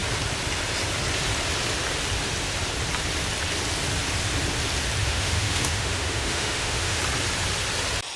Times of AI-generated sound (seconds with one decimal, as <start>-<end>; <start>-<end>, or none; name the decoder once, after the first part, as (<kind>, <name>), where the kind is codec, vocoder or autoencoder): 5.0-7.0 (autoencoder, DAC-VAE)